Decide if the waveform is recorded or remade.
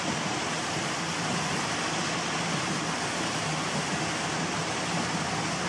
recorded